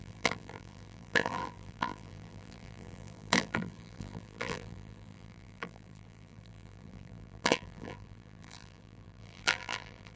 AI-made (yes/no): yes